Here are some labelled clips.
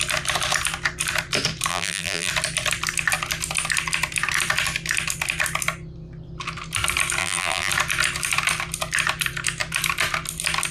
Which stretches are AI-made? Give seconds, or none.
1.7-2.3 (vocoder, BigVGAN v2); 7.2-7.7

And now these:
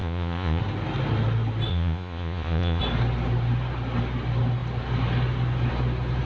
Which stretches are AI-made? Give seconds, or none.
0.0-0.6 (vocoder, Vocos); 1.7-2.8

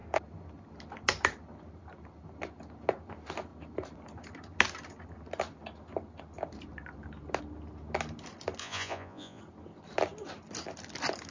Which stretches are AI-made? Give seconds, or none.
8.6-9.4 (vocoder, Vocos)

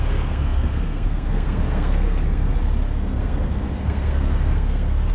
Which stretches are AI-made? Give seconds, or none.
0.0-5.1 (codec, SNAC)